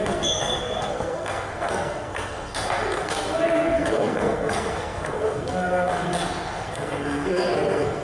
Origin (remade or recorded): remade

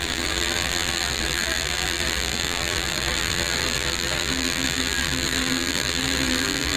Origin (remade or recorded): remade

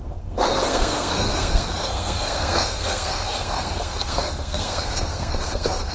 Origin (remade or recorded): remade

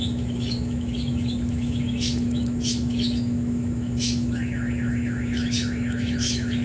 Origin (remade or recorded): remade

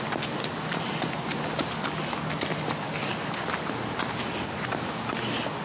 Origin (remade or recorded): recorded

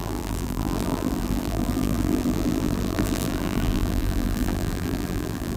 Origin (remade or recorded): remade